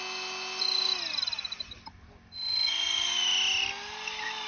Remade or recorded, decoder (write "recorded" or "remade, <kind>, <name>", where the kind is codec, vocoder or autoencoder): recorded